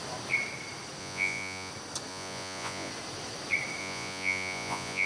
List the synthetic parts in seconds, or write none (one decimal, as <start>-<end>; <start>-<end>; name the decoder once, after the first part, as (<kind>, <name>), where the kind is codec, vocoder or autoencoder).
1.0-1.7 (vocoder, Vocos); 2.1-2.9; 3.8-5.1